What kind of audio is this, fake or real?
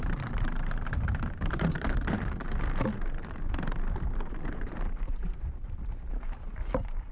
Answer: fake